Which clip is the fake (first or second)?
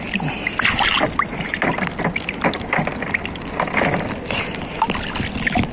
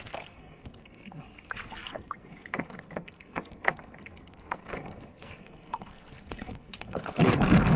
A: second